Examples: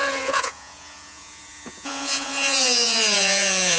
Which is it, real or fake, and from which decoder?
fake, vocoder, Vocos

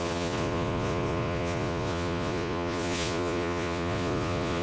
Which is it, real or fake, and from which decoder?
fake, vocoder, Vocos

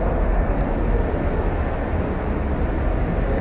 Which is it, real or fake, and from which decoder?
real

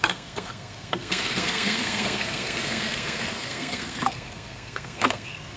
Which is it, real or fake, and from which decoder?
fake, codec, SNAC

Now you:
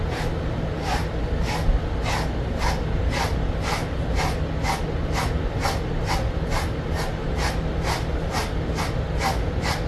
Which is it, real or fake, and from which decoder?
real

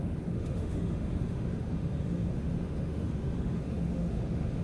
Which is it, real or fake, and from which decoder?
fake, autoencoder, DAC-VAE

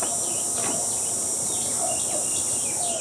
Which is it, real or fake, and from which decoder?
real